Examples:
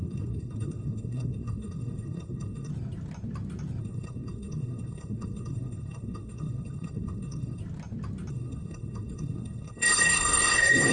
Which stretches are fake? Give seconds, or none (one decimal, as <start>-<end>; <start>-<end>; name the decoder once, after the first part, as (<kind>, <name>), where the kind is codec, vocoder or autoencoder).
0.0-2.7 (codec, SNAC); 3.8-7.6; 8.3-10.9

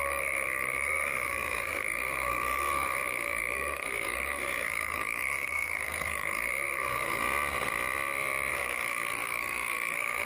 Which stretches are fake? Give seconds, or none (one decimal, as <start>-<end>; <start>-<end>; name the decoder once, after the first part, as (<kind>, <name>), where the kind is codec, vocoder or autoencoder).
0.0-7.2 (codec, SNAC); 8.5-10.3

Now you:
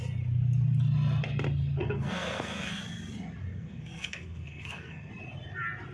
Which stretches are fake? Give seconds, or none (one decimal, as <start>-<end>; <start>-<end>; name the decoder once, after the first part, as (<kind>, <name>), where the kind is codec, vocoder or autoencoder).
1.8-2.8 (codec, SNAC); 3.5-5.1

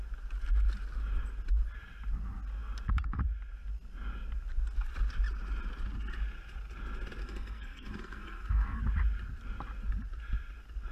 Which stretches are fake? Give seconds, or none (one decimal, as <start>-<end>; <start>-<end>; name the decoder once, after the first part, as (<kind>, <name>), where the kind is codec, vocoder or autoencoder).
7.2-8.8 (codec, SNAC)